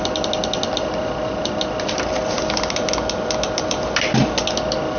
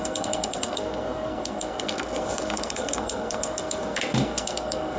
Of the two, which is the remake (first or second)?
second